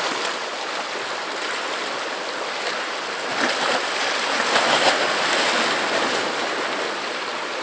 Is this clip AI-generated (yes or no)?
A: no